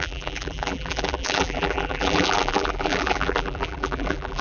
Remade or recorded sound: remade